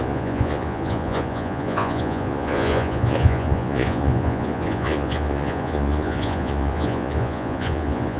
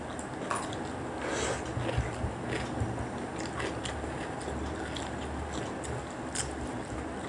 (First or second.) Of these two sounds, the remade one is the first